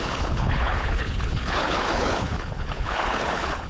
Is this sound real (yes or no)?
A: no